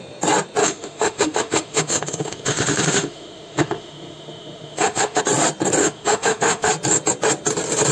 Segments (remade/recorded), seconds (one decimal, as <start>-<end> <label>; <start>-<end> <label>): 0.0-0.6 recorded; 0.6-5.2 remade; 5.2-5.8 recorded; 5.8-6.7 remade; 6.7-7.9 recorded